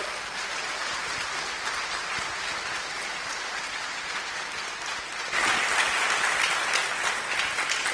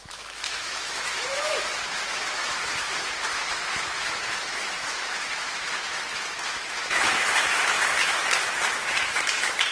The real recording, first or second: first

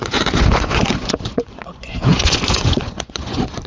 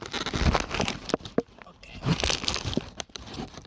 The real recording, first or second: second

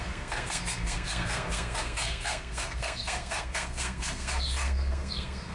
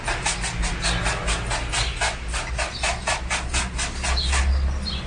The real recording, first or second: second